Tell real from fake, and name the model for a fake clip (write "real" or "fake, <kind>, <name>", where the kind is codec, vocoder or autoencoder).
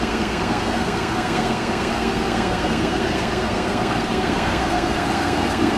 fake, codec, SNAC